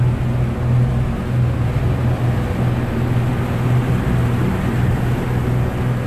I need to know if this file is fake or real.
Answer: real